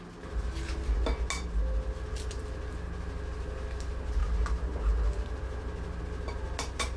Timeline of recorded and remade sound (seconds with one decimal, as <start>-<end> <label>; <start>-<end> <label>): 0.0-7.0 recorded